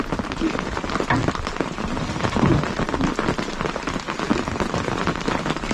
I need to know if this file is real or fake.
real